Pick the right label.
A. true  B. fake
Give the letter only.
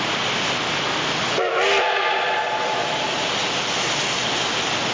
A